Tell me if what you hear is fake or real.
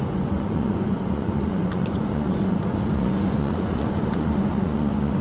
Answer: fake